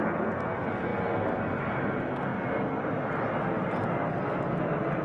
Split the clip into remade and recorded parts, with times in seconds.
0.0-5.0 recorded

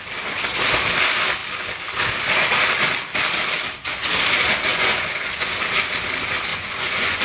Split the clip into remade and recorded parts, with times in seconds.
0.0-4.7 recorded; 4.7-5.5 remade; 5.5-6.5 recorded; 6.5-7.2 remade

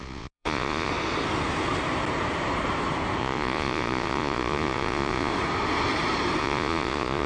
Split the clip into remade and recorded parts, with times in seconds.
0.0-0.9 remade; 0.9-3.2 recorded; 3.2-5.3 remade; 5.3-6.4 recorded; 6.4-7.3 remade

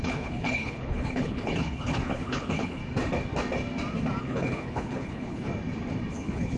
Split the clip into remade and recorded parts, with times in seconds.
0.0-2.8 remade; 2.8-4.2 recorded; 4.2-5.5 remade; 5.5-6.1 recorded; 6.1-6.6 remade